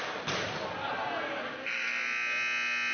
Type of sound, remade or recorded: recorded